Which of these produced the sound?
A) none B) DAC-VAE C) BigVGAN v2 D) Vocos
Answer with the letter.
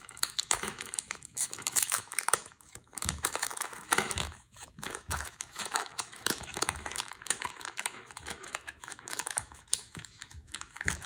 B